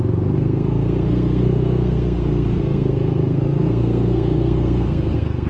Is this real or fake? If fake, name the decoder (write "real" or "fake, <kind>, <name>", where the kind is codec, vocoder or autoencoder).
fake, codec, SNAC